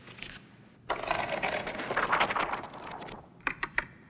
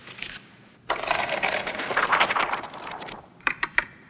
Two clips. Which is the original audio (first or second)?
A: first